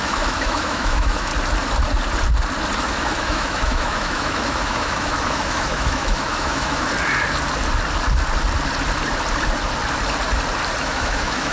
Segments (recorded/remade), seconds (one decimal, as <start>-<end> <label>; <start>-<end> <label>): 0.0-1.3 remade; 1.3-2.8 recorded; 2.8-6.9 remade; 6.9-10.8 recorded; 10.8-11.5 remade

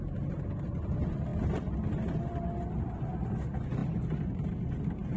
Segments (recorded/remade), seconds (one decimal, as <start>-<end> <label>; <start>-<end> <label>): 0.0-5.2 recorded